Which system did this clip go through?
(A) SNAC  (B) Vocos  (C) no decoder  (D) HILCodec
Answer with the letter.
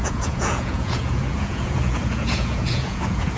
B